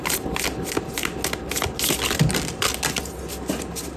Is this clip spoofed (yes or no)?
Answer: no